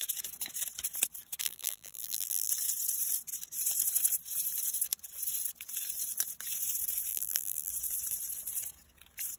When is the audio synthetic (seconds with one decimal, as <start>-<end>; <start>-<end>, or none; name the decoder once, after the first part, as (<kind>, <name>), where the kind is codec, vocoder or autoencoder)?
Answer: 1.4-2.5 (vocoder, BigVGAN v2); 7.1-7.7